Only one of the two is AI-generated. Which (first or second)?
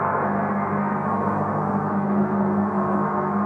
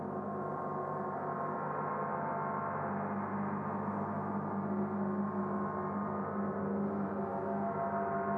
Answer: first